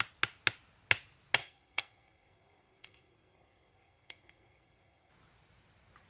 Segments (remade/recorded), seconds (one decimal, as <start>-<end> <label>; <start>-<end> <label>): 0.0-1.4 recorded; 1.4-5.1 remade; 5.1-6.1 recorded